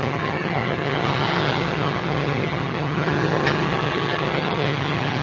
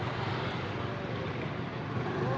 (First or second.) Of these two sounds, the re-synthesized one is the first